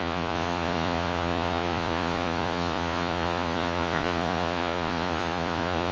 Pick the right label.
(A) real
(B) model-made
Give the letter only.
B